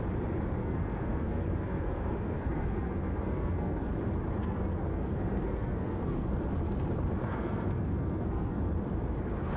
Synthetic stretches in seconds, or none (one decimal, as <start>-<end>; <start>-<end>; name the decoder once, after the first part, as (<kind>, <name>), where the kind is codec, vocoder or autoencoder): 0.6-3.9 (codec, SNAC); 4.4-6.4; 7.2-8.7

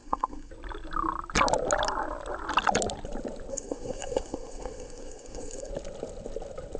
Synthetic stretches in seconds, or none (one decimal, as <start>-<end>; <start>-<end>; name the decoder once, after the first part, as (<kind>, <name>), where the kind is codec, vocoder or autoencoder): 0.0-0.5 (codec, SNAC); 3.5-5.7

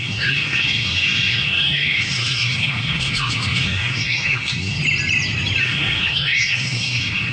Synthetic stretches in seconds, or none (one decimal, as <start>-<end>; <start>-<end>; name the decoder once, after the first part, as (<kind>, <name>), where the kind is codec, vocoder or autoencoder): 0.0-4.8 (codec, SNAC); 5.6-7.3

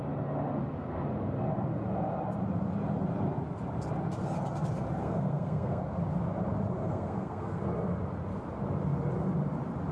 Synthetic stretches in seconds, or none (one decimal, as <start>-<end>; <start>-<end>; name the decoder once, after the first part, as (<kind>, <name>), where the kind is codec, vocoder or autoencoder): 5.0-5.8 (codec, SNAC); 6.8-7.6